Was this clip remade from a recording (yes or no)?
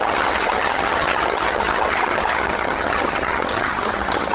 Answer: yes